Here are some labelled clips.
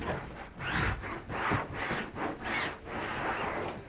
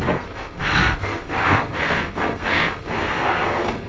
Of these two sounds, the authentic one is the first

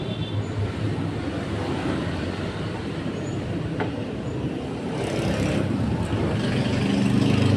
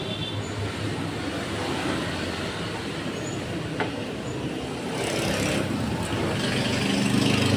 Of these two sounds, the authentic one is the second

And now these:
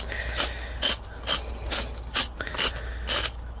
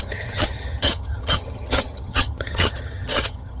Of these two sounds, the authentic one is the first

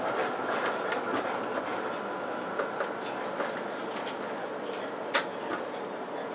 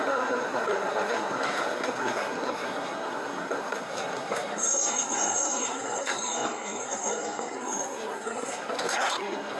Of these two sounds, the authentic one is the first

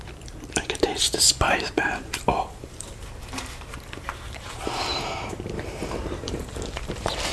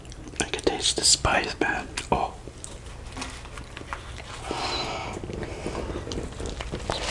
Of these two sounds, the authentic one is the second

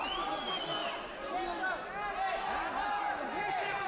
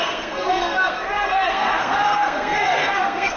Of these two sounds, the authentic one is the first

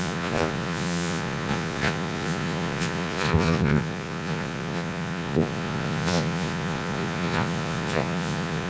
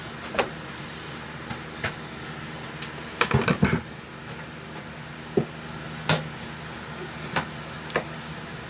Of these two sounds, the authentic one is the second